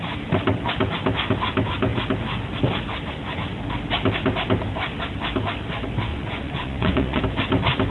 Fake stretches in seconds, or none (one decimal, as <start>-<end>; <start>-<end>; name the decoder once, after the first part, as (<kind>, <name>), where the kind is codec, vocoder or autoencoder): 6.1-7.2 (vocoder, Vocos)